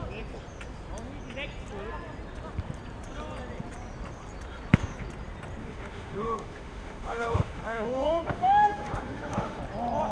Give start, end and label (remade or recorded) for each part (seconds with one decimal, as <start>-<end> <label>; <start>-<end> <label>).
0.0-5.6 recorded; 5.6-9.6 remade; 9.6-10.1 recorded